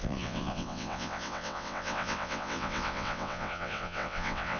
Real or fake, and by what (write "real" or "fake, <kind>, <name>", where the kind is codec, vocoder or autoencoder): fake, vocoder, WaveNeXt